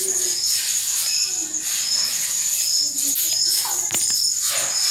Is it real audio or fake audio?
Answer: real